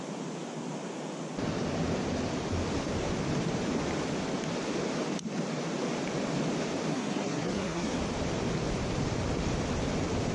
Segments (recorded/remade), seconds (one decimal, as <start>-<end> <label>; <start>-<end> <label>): 0.0-6.9 recorded; 6.9-8.0 remade; 8.0-10.3 recorded